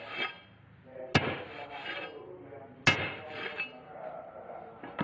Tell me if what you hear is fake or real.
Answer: real